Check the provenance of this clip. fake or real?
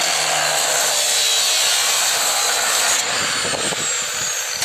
real